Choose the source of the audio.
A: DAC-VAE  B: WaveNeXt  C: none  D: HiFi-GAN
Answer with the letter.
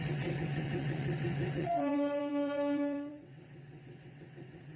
B